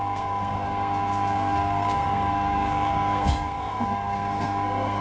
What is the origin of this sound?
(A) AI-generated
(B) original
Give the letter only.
A